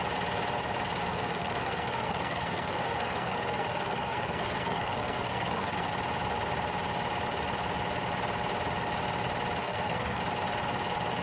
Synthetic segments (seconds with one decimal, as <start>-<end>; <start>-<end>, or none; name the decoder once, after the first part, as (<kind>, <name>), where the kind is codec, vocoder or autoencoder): 1.1-5.9 (codec, SNAC); 9.6-10.2